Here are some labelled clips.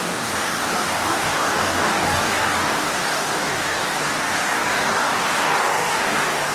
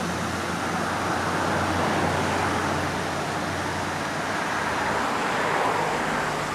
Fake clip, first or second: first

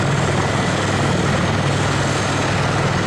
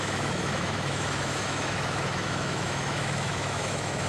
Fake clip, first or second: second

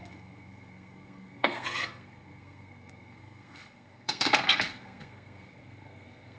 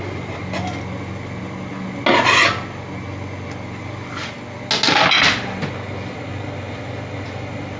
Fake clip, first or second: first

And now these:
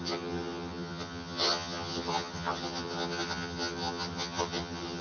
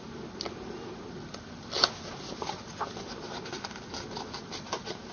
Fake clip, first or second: first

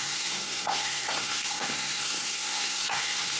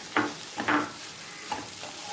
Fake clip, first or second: first